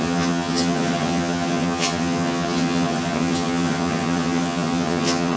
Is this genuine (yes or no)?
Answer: no